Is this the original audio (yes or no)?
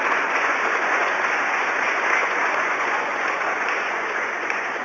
no